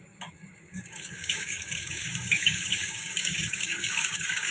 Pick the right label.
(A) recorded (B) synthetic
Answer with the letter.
B